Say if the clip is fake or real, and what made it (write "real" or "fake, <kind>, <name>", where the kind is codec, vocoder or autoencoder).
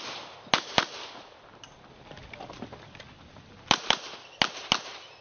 real